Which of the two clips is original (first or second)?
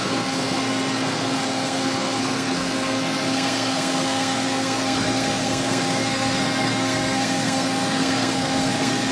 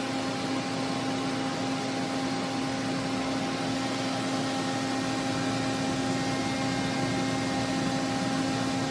second